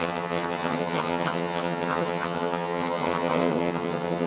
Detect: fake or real fake